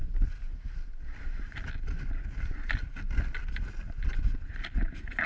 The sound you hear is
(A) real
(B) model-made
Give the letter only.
A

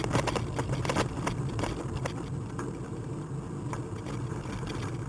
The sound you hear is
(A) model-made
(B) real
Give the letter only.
B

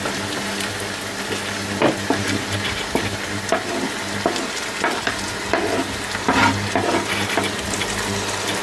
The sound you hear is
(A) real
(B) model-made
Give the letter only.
A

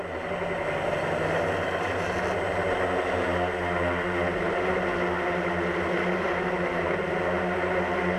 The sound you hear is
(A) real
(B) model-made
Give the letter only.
A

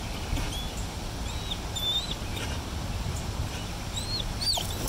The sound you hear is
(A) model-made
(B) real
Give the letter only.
B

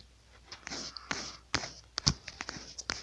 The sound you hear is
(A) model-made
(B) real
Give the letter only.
B